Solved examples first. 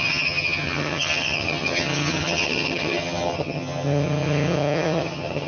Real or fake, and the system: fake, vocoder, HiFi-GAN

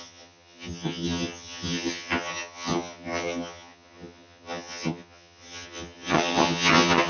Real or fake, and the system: fake, vocoder, HiFi-GAN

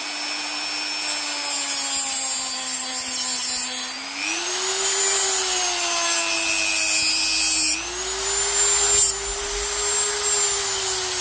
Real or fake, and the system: real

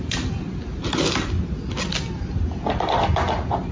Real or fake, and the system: real